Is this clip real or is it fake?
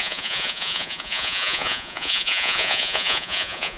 fake